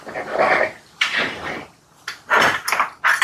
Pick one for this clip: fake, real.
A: real